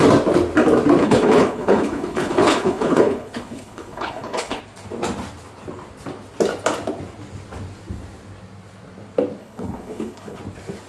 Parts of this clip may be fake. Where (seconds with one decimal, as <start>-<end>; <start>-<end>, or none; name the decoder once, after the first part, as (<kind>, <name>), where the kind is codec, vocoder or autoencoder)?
1.0-4.6 (codec, HILCodec); 9.4-10.4